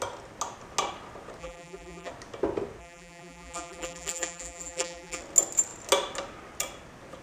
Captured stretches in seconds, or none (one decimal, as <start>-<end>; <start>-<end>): 0.0-1.4; 2.1-2.8; 5.2-7.2